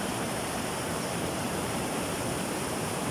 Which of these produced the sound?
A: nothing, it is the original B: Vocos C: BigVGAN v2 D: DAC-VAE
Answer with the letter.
C